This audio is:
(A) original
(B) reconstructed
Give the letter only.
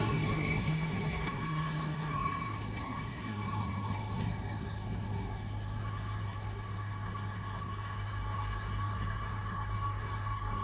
B